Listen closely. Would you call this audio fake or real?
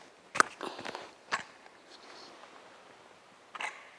real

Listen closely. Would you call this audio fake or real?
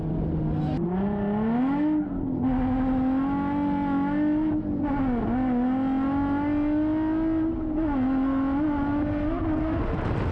real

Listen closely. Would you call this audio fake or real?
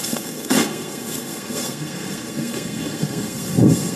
fake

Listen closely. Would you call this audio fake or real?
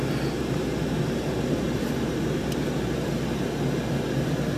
real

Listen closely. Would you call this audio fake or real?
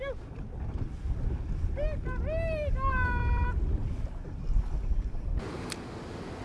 real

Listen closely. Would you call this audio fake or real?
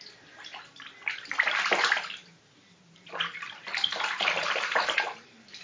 real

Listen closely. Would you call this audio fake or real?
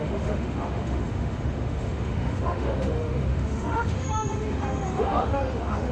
fake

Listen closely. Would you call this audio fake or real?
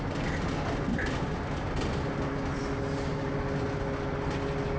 real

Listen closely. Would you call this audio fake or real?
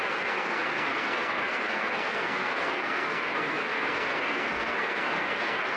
fake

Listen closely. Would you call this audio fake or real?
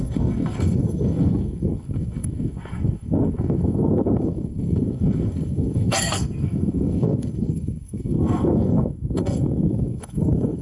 fake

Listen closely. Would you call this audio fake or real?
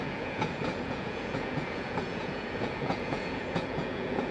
fake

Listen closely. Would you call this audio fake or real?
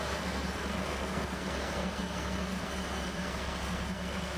fake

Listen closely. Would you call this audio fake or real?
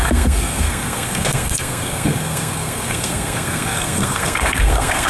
fake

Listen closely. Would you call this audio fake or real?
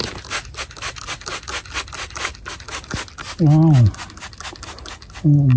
real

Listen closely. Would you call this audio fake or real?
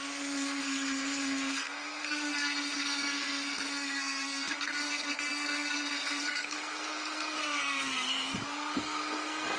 fake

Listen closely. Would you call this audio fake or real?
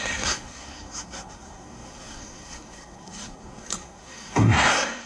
fake